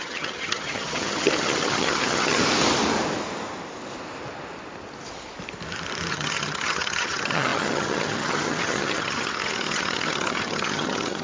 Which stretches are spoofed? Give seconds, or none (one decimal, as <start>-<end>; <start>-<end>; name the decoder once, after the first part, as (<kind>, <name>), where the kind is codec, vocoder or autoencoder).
0.0-2.4 (vocoder, HiFi-GAN); 6.1-11.2